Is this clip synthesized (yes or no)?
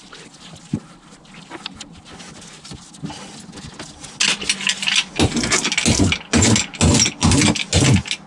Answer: no